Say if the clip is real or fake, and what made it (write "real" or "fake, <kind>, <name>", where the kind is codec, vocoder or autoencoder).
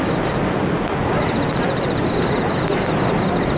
real